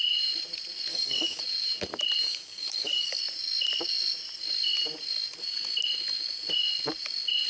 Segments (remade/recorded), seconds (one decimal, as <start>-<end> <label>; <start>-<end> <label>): 0.0-0.9 recorded; 0.9-1.4 remade; 1.4-2.2 recorded; 2.2-3.2 remade; 3.2-7.5 recorded